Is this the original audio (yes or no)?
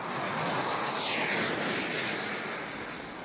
yes